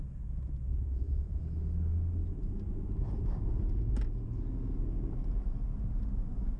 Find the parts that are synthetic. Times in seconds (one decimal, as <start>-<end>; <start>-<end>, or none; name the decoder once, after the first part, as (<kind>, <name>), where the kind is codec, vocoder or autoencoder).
0.7-1.4 (vocoder, Vocos)